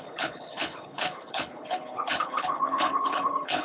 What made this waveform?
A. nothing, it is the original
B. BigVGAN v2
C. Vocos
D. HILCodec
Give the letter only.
D